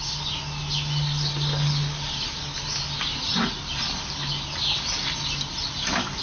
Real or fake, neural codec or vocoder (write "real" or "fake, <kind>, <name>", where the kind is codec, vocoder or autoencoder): real